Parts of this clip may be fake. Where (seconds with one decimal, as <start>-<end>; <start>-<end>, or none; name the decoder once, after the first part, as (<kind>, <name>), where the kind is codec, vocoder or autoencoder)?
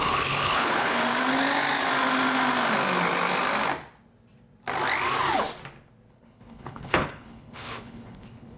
0.0-1.0 (codec, HILCodec); 6.1-8.6